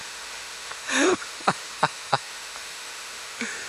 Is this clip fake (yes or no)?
yes